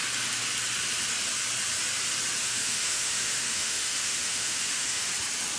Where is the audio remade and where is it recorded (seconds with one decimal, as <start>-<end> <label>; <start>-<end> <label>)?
0.0-2.4 recorded; 2.4-5.1 remade; 5.1-5.6 recorded